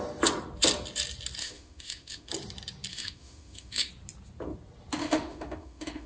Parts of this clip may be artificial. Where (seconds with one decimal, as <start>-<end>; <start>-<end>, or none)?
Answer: 1.4-2.3; 2.9-3.9; 5.0-6.1